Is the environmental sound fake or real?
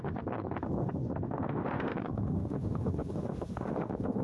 fake